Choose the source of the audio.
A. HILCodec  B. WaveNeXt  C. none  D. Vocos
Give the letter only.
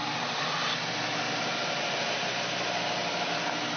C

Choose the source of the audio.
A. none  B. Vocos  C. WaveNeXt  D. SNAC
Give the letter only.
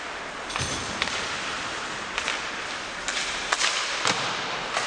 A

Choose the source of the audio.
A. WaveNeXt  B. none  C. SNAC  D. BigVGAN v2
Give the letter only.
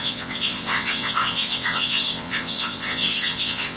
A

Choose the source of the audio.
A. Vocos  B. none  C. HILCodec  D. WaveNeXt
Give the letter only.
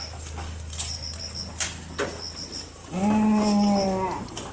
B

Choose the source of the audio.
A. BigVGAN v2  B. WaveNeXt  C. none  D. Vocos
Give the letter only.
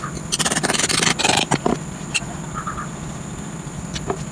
C